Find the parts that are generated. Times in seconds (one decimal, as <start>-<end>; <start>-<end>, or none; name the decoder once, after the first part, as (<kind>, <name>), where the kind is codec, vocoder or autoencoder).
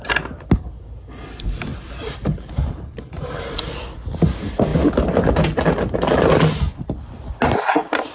1.7-3.6 (vocoder, BigVGAN v2)